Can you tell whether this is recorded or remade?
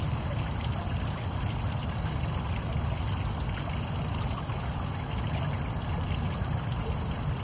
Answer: recorded